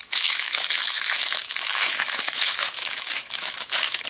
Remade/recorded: remade